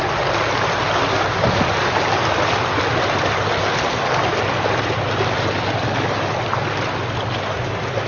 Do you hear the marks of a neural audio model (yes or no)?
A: no